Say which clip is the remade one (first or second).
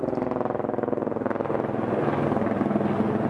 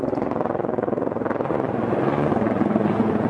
second